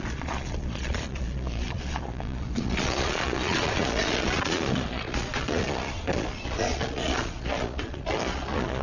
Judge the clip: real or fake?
fake